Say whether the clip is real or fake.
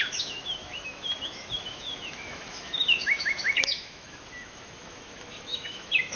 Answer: fake